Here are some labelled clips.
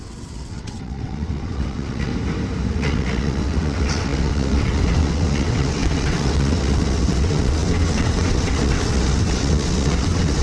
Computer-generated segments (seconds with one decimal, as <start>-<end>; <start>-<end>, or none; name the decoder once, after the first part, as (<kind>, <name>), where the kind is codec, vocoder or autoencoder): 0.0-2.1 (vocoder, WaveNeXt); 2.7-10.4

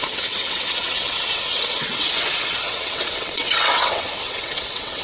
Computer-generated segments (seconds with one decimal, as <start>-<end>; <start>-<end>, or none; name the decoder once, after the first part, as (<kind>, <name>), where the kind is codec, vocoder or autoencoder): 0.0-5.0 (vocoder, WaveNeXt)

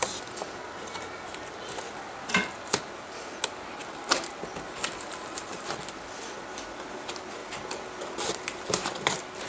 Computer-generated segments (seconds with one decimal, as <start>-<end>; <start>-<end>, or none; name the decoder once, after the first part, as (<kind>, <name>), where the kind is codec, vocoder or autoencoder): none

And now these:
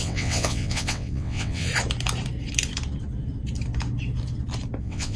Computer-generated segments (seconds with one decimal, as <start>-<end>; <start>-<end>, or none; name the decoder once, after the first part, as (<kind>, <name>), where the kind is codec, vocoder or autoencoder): 0.0-1.7 (vocoder, WaveNeXt); 4.8-5.2

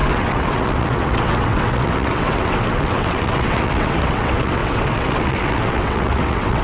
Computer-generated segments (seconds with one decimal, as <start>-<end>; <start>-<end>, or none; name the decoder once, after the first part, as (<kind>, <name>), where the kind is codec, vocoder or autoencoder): 0.0-6.6 (vocoder, WaveNeXt)

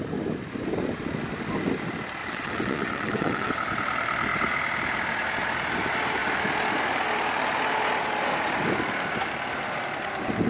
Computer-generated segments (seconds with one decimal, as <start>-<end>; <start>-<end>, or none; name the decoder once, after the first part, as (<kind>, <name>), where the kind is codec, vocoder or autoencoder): 2.2-3.5 (vocoder, WaveNeXt)